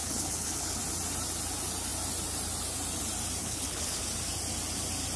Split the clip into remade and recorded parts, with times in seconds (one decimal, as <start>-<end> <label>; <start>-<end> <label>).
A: 0.0-0.8 remade; 0.8-3.4 recorded; 3.4-4.0 remade; 4.0-5.2 recorded